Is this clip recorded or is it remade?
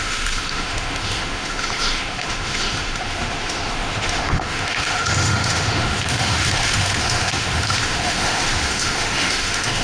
remade